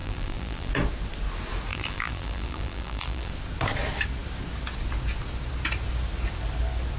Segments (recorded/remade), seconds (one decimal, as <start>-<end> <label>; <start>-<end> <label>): 0.0-0.7 remade; 0.7-1.7 recorded; 1.7-3.3 remade; 3.3-7.0 recorded